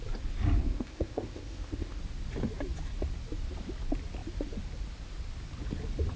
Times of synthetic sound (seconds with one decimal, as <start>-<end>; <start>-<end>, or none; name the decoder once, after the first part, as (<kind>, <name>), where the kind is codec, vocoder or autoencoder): 0.6-2.0 (codec, ZipCodec)